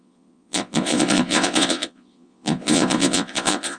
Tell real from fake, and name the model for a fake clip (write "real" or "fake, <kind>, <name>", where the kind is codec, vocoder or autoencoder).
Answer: fake, vocoder, Vocos